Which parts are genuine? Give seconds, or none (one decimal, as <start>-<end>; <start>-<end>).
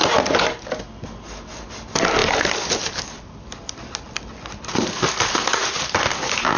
0.0-6.6